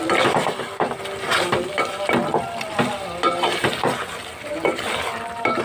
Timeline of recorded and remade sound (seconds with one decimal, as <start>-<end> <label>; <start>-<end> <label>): 0.0-5.6 recorded